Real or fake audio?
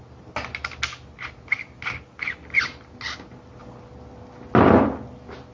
real